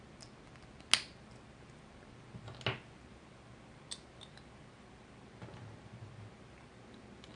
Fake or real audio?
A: real